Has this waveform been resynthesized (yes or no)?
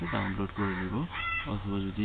yes